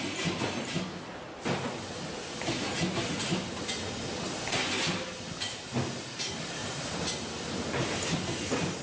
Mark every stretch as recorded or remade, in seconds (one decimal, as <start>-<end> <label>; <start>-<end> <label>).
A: 0.0-8.8 recorded